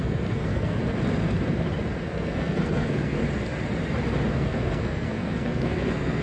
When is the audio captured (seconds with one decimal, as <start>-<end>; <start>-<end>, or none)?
0.8-2.0; 3.2-4.3